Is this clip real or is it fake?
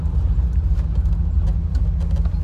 real